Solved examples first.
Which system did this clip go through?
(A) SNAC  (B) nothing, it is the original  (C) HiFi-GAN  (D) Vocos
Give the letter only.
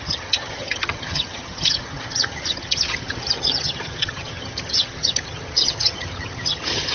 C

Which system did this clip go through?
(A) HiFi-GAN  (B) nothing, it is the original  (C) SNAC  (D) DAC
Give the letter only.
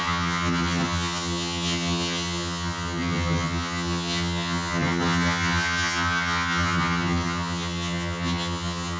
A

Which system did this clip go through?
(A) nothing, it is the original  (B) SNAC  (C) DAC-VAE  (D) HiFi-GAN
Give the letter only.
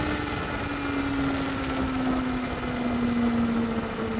A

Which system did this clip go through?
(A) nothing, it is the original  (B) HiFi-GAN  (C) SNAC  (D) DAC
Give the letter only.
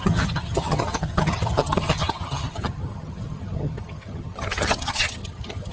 B